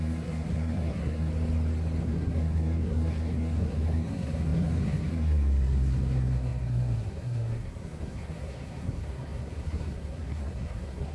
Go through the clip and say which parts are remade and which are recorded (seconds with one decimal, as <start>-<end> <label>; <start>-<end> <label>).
0.0-1.3 remade; 1.3-2.0 recorded; 2.0-11.1 remade

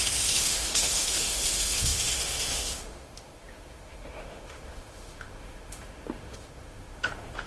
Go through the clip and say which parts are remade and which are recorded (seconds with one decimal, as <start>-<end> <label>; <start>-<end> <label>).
0.0-7.5 remade

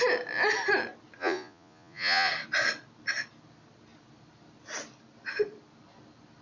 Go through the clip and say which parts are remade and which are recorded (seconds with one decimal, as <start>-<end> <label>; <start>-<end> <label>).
0.0-1.2 recorded; 1.2-2.3 remade; 2.3-6.4 recorded

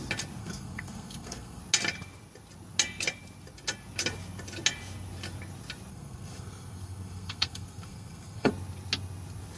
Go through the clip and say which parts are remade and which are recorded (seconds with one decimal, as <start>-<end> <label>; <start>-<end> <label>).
0.0-0.4 recorded; 0.4-1.6 remade; 1.6-5.9 recorded; 5.9-8.5 remade; 8.5-9.6 recorded

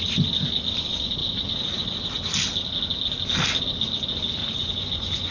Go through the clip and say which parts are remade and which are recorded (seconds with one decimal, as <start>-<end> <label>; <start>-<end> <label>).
0.0-4.4 recorded; 4.4-5.3 remade

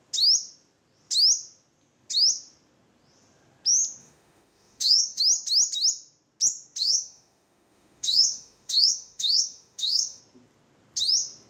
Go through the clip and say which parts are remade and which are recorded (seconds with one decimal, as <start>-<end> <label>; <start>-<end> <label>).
0.0-4.0 recorded; 4.0-5.2 remade; 5.2-6.8 recorded; 6.8-10.2 remade; 10.2-11.5 recorded